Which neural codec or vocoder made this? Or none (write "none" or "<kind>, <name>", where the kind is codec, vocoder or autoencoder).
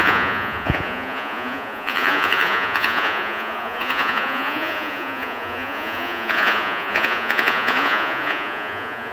vocoder, Vocos